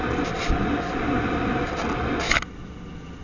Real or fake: real